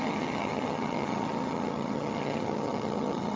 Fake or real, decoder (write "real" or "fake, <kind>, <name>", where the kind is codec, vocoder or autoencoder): fake, vocoder, HiFi-GAN